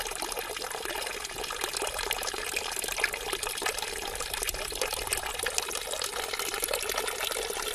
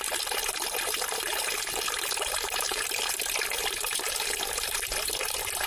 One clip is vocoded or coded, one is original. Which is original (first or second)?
first